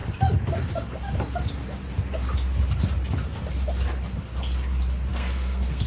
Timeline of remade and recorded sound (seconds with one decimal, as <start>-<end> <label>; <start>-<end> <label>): 0.0-5.1 recorded; 5.1-5.9 remade